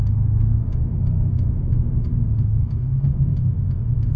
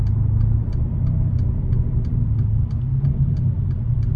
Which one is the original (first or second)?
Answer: second